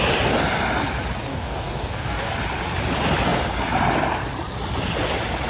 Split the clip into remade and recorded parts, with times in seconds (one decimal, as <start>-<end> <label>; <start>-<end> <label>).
0.0-1.3 recorded; 1.3-2.3 remade; 2.3-5.5 recorded